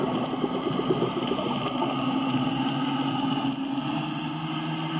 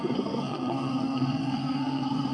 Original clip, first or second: first